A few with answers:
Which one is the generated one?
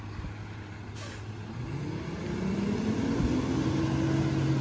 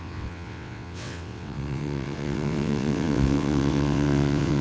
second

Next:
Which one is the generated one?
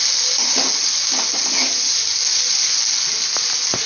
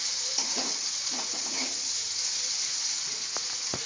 second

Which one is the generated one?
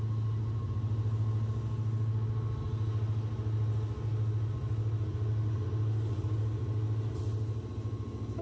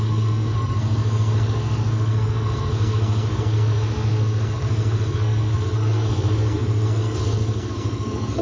second